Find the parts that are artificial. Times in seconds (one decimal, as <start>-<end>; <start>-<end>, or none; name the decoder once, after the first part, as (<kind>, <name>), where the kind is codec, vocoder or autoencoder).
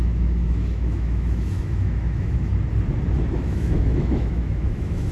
0.0-2.5 (autoencoder, DAC-VAE); 3.3-5.1